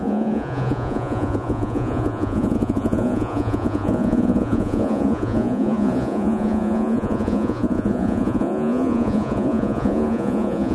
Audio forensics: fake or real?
fake